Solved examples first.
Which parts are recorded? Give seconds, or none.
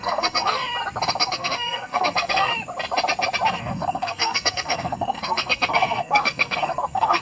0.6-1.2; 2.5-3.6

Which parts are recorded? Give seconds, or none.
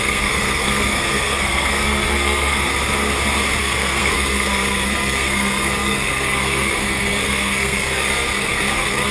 2.7-3.6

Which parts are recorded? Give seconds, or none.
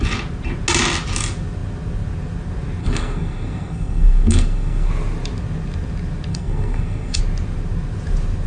0.0-2.8; 4.9-6.3; 7.2-8.5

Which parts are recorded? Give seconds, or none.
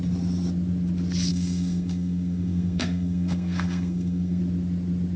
0.0-1.3; 4.4-5.2